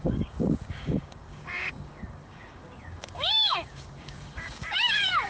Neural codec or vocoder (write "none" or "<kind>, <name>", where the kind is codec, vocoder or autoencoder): codec, DAC